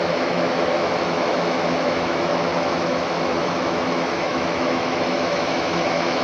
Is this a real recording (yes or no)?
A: no